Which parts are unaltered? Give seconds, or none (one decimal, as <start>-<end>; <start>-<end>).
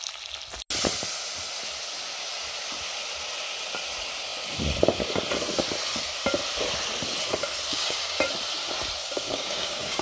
0.0-7.7; 8.2-9.0